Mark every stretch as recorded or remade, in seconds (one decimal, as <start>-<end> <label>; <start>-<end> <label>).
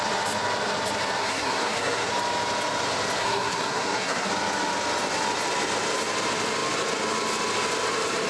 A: 0.0-1.2 recorded; 1.2-2.1 remade; 2.1-3.2 recorded; 3.2-4.3 remade; 4.3-8.3 recorded